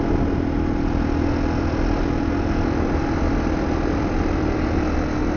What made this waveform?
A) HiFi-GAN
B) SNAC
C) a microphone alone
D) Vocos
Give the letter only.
C